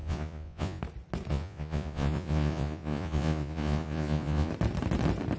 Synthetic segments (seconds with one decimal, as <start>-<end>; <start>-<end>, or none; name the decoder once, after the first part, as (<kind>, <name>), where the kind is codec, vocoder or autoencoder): 0.0-0.8 (vocoder, Vocos); 1.3-4.5